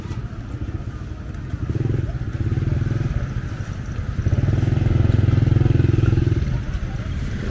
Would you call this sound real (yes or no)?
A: yes